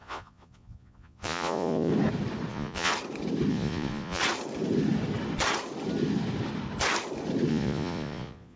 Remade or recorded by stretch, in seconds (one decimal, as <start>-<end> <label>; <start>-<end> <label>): 0.0-1.9 remade; 1.9-2.5 recorded; 2.5-2.9 remade; 2.9-3.5 recorded; 3.5-4.2 remade; 4.2-7.5 recorded; 7.5-8.6 remade